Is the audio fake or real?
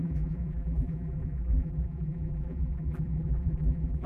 fake